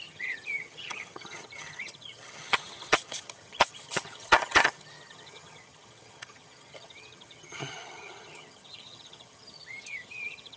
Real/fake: fake